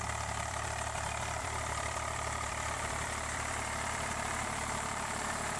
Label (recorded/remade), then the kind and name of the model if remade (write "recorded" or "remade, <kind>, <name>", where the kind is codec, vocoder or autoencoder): remade, vocoder, BigVGAN v2